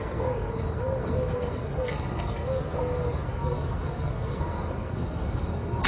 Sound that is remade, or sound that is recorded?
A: remade